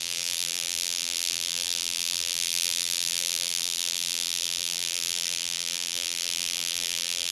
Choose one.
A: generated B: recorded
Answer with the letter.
A